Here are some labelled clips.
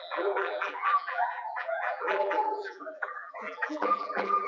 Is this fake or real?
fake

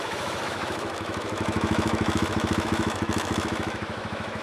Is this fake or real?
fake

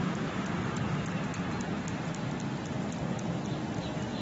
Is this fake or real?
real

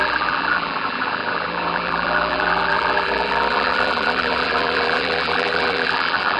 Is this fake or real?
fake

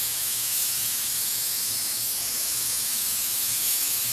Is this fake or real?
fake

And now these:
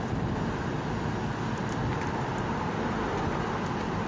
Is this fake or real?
real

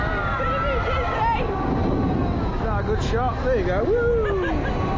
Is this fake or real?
real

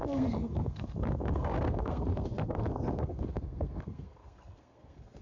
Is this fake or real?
fake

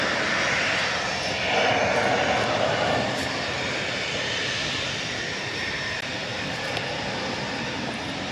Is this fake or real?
real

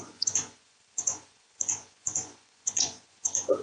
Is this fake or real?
fake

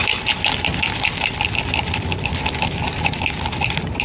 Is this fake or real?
fake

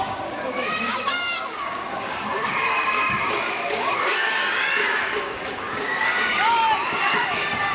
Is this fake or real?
fake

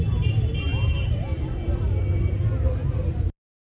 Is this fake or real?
fake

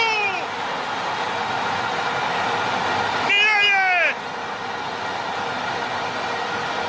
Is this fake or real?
real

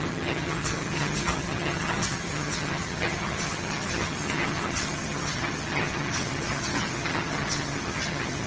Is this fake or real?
fake